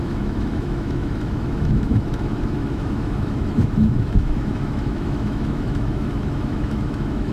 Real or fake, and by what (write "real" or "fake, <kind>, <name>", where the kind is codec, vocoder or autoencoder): fake, autoencoder, DAC-VAE